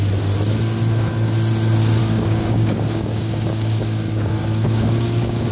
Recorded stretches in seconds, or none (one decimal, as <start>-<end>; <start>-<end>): 0.0-2.0